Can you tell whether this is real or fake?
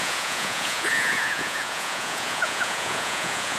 fake